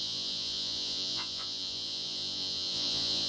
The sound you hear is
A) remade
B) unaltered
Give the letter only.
A